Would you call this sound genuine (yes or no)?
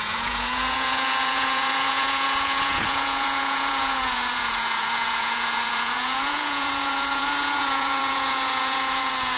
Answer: no